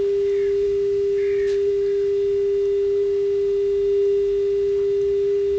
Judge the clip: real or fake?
real